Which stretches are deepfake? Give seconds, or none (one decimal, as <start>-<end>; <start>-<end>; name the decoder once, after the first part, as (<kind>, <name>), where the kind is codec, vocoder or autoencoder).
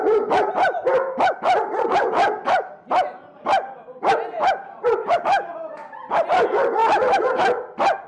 none